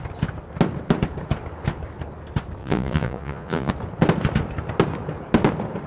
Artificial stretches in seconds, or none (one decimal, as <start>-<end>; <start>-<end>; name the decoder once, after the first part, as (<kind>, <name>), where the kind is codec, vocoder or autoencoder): 2.6-3.7 (vocoder, Vocos)